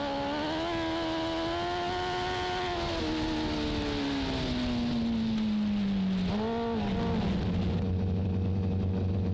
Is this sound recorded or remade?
recorded